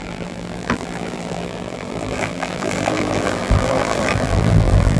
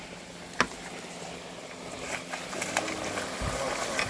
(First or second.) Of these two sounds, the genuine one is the second